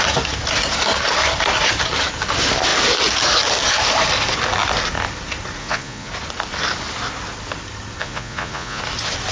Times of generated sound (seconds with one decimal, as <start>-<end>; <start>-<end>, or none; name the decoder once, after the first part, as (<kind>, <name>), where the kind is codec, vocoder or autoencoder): 5.6-6.1 (vocoder, Vocos); 8.0-8.8